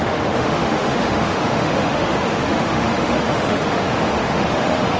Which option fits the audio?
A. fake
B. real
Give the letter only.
A